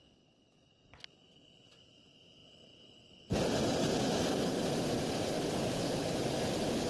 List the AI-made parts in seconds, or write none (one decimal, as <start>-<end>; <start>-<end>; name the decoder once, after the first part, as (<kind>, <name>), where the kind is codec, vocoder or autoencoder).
none